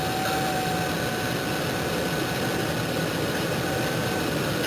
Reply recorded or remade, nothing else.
recorded